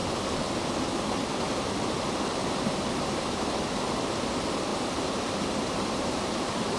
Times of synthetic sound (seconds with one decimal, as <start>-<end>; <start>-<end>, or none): 2.4-3.8; 4.7-6.8